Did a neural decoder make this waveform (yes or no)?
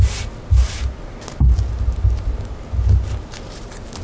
no